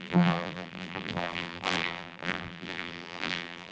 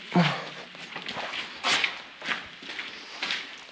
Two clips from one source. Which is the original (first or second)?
second